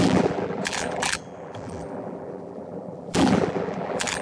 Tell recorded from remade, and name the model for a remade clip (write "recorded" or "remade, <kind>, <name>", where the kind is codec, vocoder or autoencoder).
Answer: remade, vocoder, BigVGAN v2